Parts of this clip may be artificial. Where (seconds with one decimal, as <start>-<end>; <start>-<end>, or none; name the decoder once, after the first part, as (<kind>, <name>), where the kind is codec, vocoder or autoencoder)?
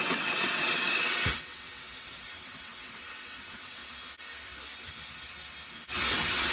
0.0-3.8 (vocoder, WaveNeXt); 6.1-6.5